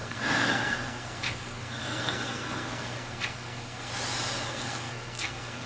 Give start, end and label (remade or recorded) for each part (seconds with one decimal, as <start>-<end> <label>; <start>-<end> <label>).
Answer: 0.0-3.9 remade; 3.9-4.5 recorded; 4.5-5.7 remade